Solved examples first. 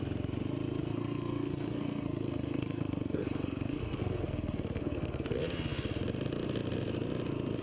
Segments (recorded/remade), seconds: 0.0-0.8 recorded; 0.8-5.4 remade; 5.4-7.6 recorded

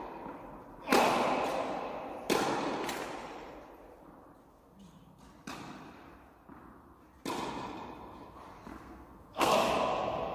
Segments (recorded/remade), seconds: 0.0-8.7 recorded; 8.7-9.5 remade; 9.5-10.3 recorded

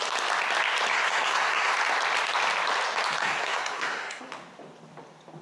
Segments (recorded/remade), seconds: 0.0-0.9 recorded; 0.9-1.7 remade; 1.7-3.2 recorded; 3.2-4.3 remade; 4.3-5.4 recorded

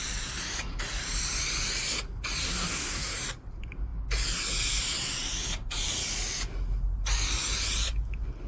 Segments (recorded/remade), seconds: 0.0-2.4 recorded; 2.4-3.2 remade; 3.2-8.5 recorded

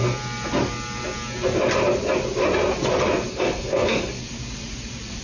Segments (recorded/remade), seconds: 0.0-3.3 recorded; 3.3-4.0 remade; 4.0-5.2 recorded

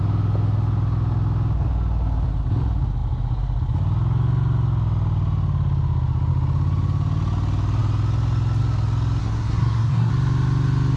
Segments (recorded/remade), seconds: 0.0-9.2 recorded; 9.2-10.1 remade; 10.1-11.0 recorded

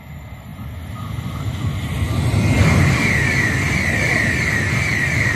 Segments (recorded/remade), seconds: 0.0-5.4 recorded